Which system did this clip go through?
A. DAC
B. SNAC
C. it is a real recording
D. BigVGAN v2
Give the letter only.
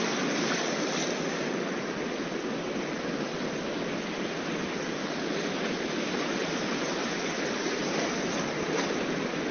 C